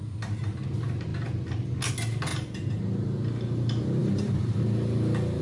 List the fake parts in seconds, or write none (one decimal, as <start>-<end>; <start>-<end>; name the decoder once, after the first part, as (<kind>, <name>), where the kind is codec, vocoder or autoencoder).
2.3-2.8 (vocoder, BigVGAN v2); 4.0-4.6